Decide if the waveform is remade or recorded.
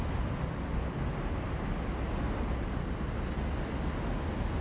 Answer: recorded